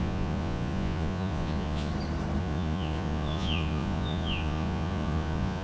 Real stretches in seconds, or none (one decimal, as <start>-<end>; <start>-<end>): 1.9-2.4